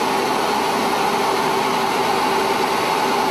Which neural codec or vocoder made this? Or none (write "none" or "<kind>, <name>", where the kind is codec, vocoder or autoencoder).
none